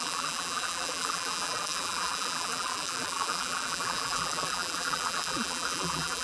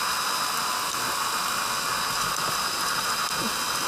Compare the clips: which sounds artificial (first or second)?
first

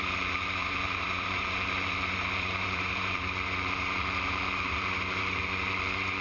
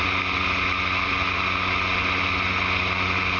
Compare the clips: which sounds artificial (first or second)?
first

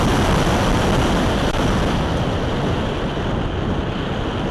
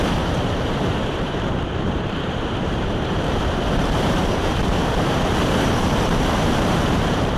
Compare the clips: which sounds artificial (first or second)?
second